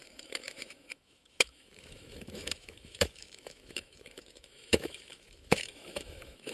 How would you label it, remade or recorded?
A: remade